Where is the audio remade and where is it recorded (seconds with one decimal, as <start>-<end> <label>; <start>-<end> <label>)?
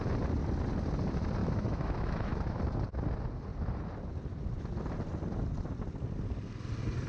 0.0-1.4 recorded; 1.4-2.6 remade; 2.6-7.1 recorded